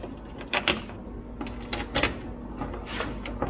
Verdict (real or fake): real